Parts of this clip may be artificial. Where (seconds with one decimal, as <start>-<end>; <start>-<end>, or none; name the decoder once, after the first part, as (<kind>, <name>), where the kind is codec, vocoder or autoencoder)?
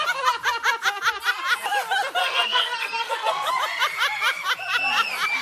2.2-3.5 (codec, SNAC)